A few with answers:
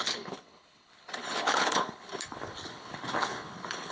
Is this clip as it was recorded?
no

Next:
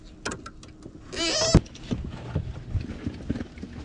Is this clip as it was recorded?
yes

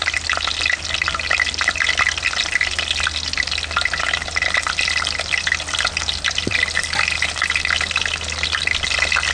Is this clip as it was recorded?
yes